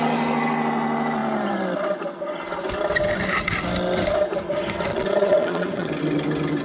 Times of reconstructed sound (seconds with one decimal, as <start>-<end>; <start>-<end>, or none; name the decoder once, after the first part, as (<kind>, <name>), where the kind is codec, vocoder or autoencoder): 4.9-5.9 (vocoder, Vocos)